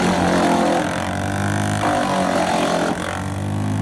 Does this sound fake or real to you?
real